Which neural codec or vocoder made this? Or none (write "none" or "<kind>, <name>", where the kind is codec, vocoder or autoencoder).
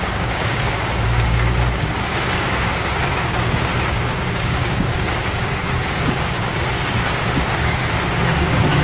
codec, DAC